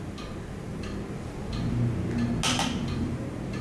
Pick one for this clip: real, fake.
real